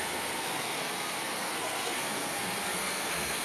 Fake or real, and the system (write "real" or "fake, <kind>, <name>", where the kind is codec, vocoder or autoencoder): fake, codec, SNAC